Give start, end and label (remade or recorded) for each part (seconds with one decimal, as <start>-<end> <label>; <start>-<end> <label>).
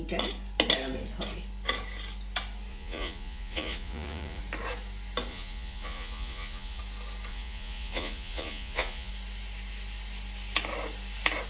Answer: 0.0-2.7 recorded; 2.7-4.4 remade; 4.4-5.3 recorded; 5.3-6.8 remade; 6.8-7.3 recorded; 7.3-9.1 remade; 9.1-11.5 recorded